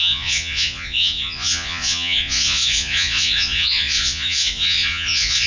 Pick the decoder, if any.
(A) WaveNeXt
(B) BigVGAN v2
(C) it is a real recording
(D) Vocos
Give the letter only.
D